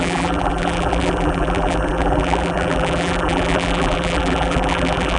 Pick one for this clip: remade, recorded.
remade